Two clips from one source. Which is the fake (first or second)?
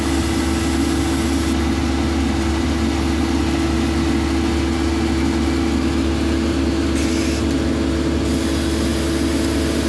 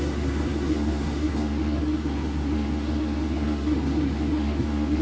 second